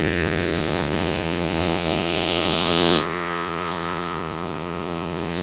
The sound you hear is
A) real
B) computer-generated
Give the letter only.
B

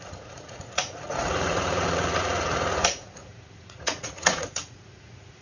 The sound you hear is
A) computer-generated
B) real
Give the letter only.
A